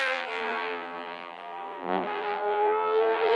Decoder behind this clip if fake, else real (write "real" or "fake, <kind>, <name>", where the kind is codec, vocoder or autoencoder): fake, vocoder, BigVGAN v2